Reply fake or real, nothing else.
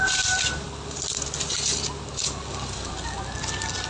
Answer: real